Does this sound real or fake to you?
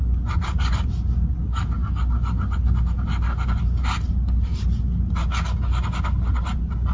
real